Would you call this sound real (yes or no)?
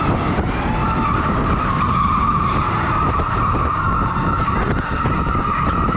yes